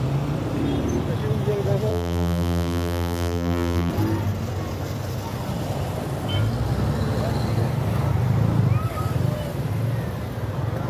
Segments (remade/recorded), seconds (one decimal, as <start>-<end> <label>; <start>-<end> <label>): 0.0-1.9 recorded; 1.9-3.9 remade; 3.9-10.9 recorded